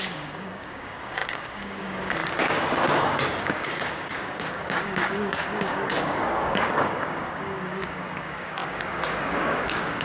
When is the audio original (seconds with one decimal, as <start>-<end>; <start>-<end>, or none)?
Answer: none